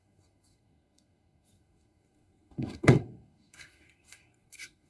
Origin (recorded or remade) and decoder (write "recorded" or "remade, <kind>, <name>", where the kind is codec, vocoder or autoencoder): remade, codec, SNAC